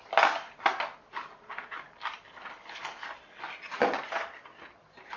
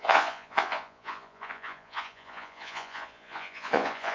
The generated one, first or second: second